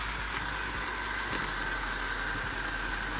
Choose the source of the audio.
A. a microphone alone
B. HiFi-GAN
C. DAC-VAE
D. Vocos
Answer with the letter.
A